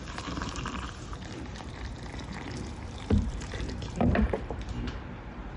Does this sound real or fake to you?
fake